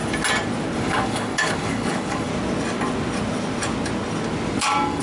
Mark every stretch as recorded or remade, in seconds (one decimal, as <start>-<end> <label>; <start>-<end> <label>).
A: 0.0-0.8 recorded; 0.8-2.3 remade; 2.3-4.6 recorded; 4.6-5.0 remade